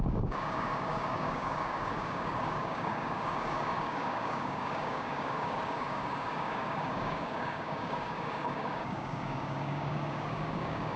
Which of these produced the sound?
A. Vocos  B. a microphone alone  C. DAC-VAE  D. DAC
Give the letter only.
D